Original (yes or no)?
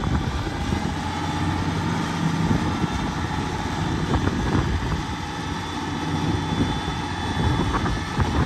yes